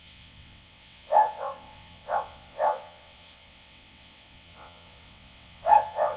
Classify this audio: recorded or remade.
remade